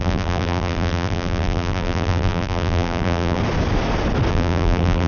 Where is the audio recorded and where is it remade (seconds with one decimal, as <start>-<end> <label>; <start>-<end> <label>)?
0.0-3.4 remade; 3.4-4.3 recorded; 4.3-5.1 remade

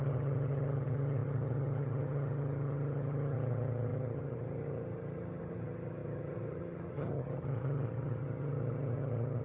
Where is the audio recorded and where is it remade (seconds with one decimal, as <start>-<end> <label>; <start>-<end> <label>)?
0.0-9.4 remade